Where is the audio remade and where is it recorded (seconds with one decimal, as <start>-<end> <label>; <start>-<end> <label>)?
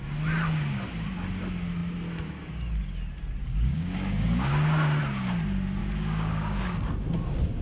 0.0-3.4 recorded; 3.4-5.0 remade; 5.0-5.8 recorded; 5.8-6.9 remade; 6.9-7.6 recorded